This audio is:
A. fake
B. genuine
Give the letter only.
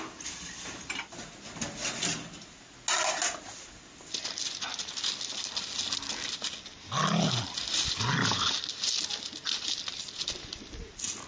B